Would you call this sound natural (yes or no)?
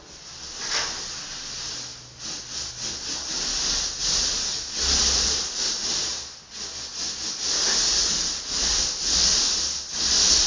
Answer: yes